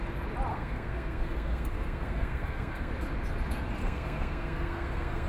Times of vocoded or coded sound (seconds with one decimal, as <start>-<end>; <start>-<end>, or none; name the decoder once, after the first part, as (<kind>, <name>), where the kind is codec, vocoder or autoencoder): 0.5-2.9 (codec, SNAC); 3.8-5.3